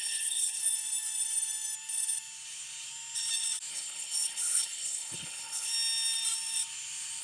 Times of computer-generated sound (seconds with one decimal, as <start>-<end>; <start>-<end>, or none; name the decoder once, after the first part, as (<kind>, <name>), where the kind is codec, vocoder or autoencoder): 0.0-0.6 (codec, HILCodec); 3.7-5.7